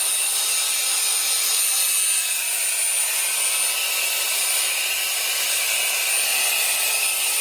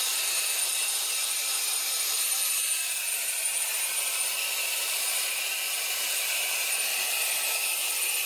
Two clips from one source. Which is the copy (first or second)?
second